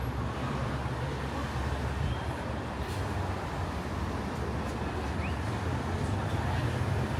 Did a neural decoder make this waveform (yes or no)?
no